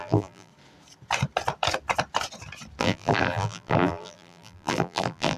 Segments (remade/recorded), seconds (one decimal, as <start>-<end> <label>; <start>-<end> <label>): 0.0-0.5 remade; 0.5-2.8 recorded; 2.8-5.4 remade